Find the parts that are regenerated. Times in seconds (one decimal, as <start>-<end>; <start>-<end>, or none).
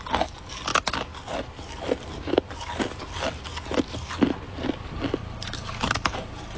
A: 5.2-6.6